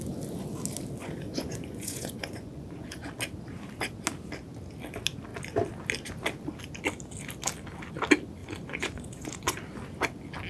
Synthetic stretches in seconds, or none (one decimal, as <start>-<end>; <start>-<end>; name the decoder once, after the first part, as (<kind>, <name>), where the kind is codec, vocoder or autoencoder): 1.0-3.1 (vocoder, Vocos); 8.4-9.5